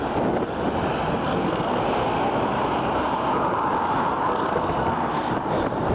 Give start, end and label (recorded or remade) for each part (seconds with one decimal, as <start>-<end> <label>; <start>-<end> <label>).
0.0-1.2 recorded; 1.2-1.8 remade; 1.8-4.3 recorded; 4.3-5.3 remade; 5.3-5.9 recorded